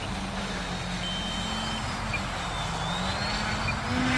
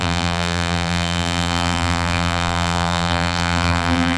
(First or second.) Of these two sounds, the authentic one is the first